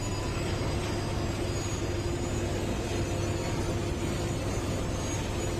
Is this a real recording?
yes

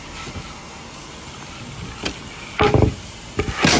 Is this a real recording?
yes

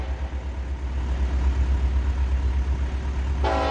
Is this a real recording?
yes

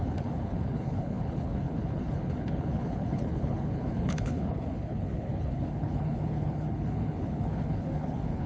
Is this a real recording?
no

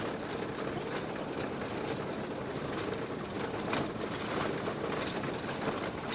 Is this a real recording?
yes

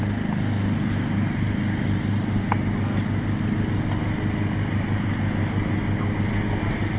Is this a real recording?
yes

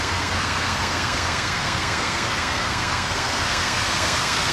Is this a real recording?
no